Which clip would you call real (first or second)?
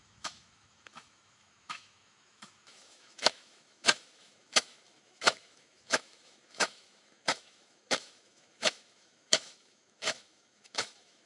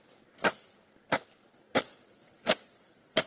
second